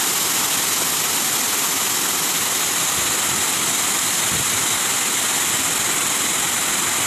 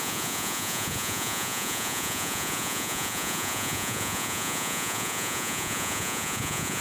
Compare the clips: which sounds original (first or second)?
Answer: first